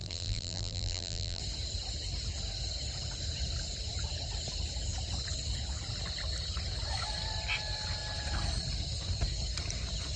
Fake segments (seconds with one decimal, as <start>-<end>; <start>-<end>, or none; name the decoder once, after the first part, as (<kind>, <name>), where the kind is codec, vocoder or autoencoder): 0.0-1.4 (vocoder, BigVGAN v2)